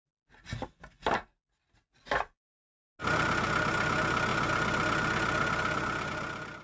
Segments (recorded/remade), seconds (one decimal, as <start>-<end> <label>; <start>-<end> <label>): 0.0-6.6 recorded

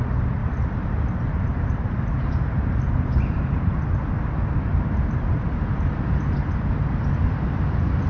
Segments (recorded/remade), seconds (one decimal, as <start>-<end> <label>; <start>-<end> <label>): 0.0-0.4 recorded; 0.4-3.9 remade; 3.9-4.7 recorded; 4.7-5.9 remade; 5.9-8.1 recorded

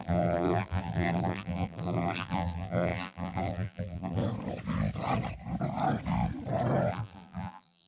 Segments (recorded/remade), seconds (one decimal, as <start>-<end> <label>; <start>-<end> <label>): 0.0-4.2 remade; 4.2-6.9 recorded; 6.9-7.9 remade

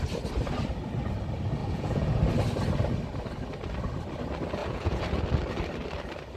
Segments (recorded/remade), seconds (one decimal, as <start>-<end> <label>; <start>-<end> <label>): 0.0-1.6 recorded; 1.6-2.2 remade; 2.2-4.6 recorded; 4.6-5.2 remade; 5.2-6.4 recorded

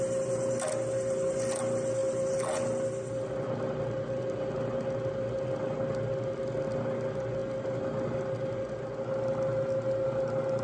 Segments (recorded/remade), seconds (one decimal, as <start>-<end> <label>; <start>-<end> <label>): 0.0-10.6 recorded

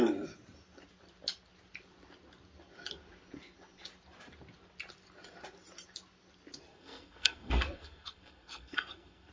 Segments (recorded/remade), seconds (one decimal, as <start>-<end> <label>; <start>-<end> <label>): 0.0-6.7 recorded; 6.7-9.3 remade

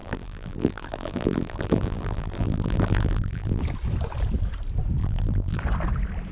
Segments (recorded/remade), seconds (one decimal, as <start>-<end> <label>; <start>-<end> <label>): 0.0-3.6 remade; 3.6-5.0 recorded; 5.0-5.6 remade; 5.6-6.3 recorded